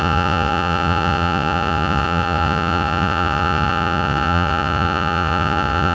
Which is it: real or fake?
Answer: fake